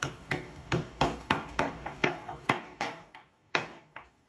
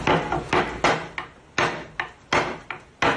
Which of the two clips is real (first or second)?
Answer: second